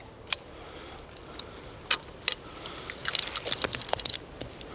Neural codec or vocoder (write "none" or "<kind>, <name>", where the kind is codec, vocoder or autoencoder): none